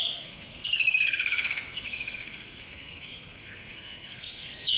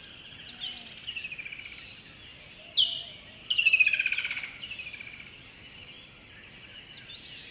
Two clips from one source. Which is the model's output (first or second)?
first